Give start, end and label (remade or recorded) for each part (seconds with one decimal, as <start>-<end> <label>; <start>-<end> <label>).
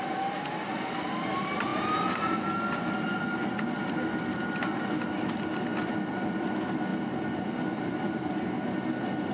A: 0.0-9.3 recorded